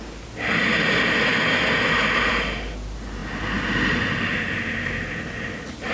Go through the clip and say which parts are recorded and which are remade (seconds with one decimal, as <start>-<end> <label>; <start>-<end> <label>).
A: 0.0-5.9 recorded